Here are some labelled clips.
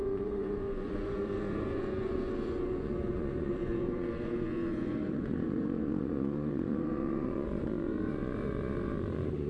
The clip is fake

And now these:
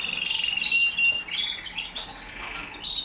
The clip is real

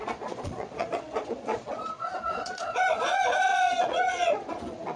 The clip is fake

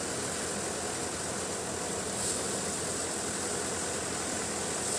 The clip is real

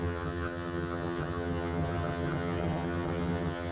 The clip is fake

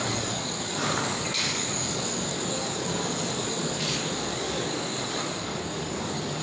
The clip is fake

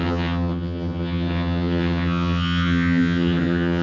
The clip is fake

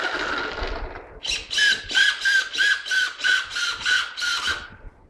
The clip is real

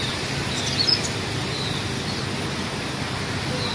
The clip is real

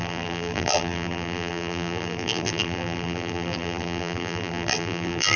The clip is fake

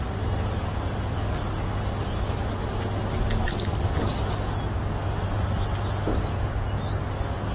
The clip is real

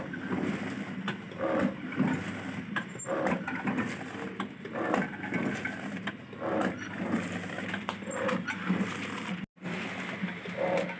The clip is real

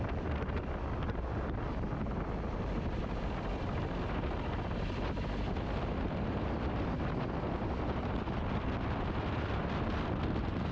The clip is fake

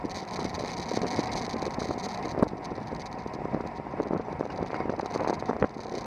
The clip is real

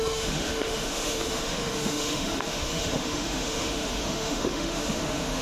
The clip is fake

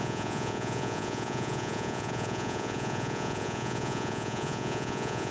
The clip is fake